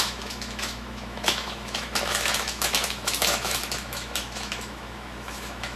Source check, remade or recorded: remade